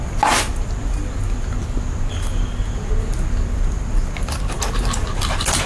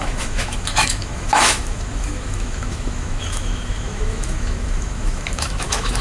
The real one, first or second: first